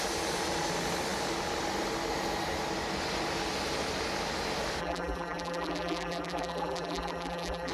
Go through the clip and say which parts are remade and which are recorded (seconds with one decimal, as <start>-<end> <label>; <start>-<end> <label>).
0.0-4.8 recorded; 4.8-7.7 remade